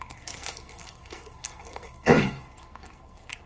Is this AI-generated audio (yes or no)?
yes